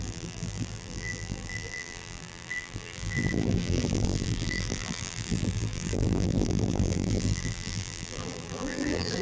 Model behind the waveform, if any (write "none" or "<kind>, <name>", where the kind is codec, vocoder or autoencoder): vocoder, BigVGAN v2